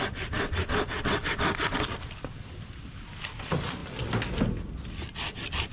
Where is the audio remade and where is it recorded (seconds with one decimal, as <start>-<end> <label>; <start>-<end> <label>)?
0.0-5.7 recorded